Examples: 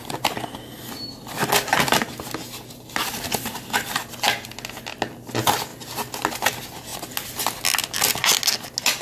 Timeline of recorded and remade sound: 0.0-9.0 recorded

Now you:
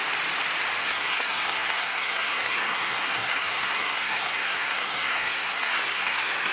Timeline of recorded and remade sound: 0.0-0.8 recorded; 0.8-6.5 remade

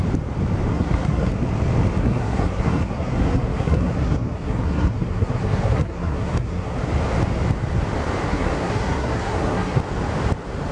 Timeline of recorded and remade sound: 0.0-0.7 recorded; 0.7-1.3 remade; 1.3-2.0 recorded; 2.0-6.9 remade; 6.9-8.3 recorded; 8.3-9.8 remade; 9.8-10.7 recorded

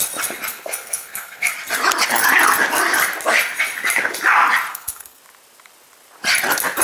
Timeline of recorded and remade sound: 0.0-0.5 recorded; 0.5-1.5 remade; 1.5-4.7 recorded; 4.7-5.2 remade; 5.2-6.8 recorded

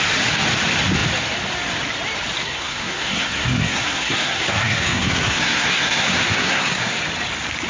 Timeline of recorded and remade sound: 0.0-2.4 recorded; 2.4-7.0 remade; 7.0-7.7 recorded

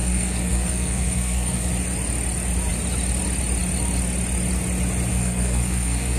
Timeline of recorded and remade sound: 0.0-1.7 remade; 1.7-5.1 recorded; 5.1-6.2 remade

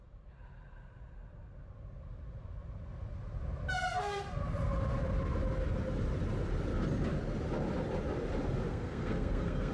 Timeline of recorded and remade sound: 0.0-8.7 recorded; 8.7-9.7 remade

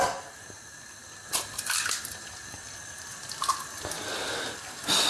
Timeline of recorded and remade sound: 0.0-5.1 recorded